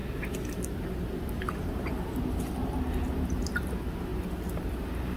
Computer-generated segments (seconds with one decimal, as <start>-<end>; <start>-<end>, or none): 0.0-5.2